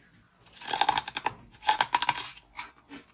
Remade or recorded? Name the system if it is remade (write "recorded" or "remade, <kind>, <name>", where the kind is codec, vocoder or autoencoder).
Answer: recorded